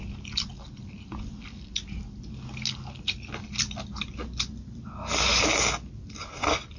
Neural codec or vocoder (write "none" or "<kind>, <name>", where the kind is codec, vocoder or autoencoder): none